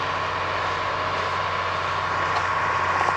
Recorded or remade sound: recorded